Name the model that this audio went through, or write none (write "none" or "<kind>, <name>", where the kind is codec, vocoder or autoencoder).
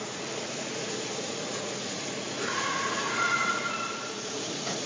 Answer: vocoder, Vocos